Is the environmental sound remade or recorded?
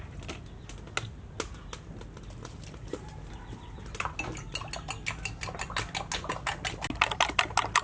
recorded